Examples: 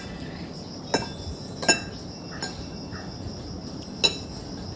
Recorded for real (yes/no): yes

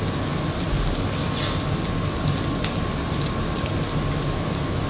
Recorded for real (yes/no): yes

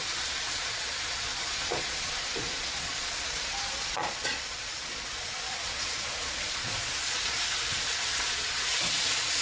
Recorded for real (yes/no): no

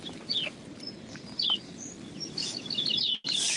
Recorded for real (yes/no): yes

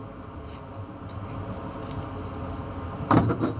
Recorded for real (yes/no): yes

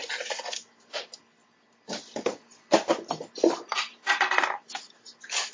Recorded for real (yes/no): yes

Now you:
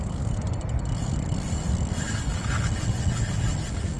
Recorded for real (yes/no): yes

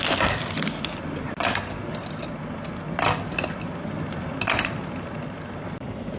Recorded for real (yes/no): yes